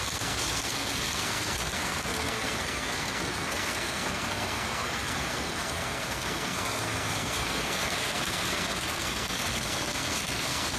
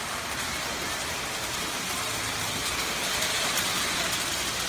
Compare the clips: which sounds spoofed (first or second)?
first